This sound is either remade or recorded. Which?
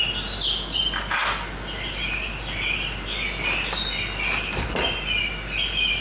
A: recorded